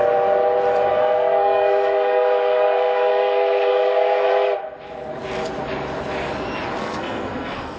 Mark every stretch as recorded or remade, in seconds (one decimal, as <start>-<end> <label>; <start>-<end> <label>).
0.0-1.0 recorded; 1.0-4.3 remade; 4.3-6.8 recorded; 6.8-7.8 remade